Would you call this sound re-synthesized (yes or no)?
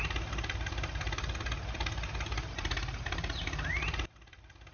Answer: no